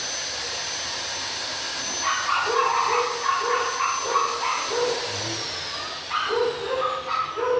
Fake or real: real